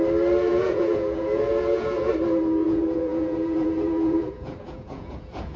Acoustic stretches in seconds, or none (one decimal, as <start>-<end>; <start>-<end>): 0.0-0.5; 2.1-2.6